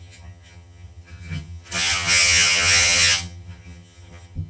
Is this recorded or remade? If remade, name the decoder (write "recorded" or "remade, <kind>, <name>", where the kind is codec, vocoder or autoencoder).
remade, vocoder, HiFi-GAN